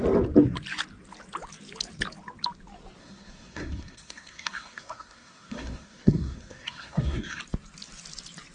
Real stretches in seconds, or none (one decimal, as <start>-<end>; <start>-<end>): 0.0-3.0; 7.4-8.5